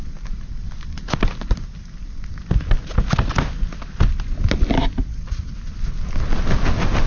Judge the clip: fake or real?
real